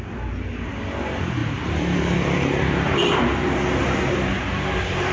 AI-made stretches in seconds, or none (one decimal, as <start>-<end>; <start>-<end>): 0.0-5.1